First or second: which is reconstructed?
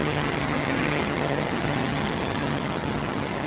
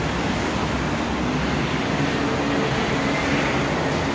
first